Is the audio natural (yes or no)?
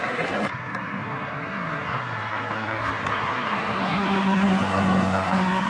no